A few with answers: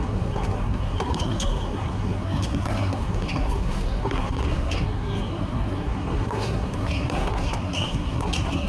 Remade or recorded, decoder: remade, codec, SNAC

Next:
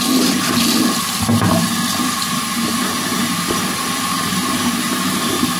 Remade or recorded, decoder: recorded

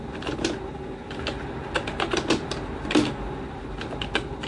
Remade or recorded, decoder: recorded